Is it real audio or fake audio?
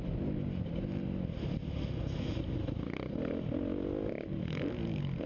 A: real